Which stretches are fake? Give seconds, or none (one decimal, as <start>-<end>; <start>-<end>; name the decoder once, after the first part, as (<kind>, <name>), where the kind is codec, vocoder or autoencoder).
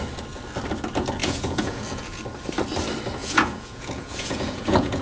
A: 1.2-2.2 (vocoder, Vocos); 3.2-5.0